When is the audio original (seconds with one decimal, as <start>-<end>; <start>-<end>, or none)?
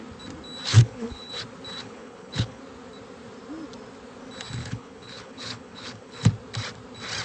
0.0-0.7; 1.3-1.8; 2.6-4.6; 6.3-7.2